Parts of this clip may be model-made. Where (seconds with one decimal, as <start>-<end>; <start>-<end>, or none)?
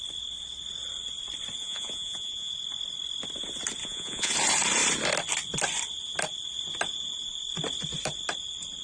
1.6-2.5; 3.8-4.3